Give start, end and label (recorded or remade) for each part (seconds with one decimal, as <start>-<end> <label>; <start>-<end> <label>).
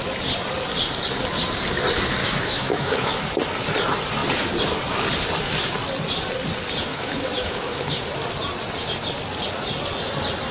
0.0-2.2 recorded; 2.2-3.2 remade; 3.2-6.9 recorded; 6.9-8.0 remade; 8.0-10.5 recorded